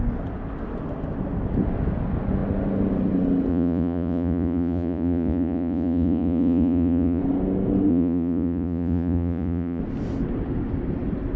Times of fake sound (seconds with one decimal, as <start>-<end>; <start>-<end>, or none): 3.5-7.2; 7.9-9.8